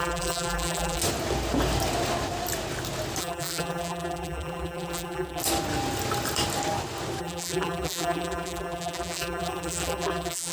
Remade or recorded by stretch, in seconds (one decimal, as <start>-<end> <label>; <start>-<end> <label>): 0.0-1.0 remade; 1.0-3.2 recorded; 3.2-5.4 remade; 5.4-7.2 recorded; 7.2-10.5 remade